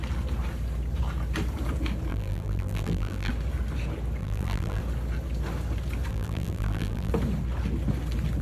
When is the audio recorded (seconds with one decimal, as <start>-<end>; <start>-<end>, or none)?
0.0-2.1; 3.3-4.2; 4.8-6.1; 7.1-8.4